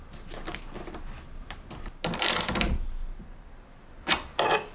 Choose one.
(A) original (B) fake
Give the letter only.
A